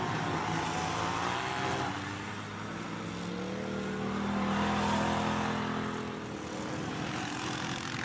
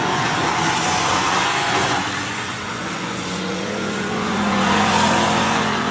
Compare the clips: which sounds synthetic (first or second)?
second